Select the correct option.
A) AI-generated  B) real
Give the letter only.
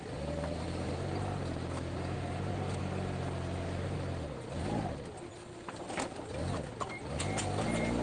B